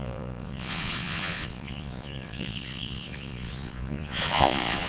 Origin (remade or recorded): remade